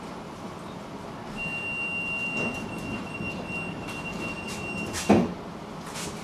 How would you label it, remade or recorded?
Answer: recorded